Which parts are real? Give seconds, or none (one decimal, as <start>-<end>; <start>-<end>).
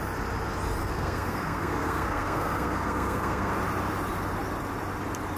0.0-0.8; 3.5-5.4